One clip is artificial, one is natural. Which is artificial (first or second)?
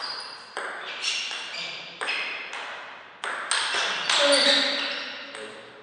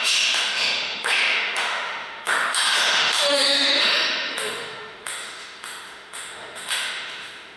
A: second